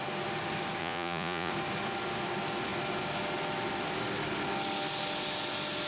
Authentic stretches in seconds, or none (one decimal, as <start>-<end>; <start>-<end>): 0.0-0.8; 1.5-5.9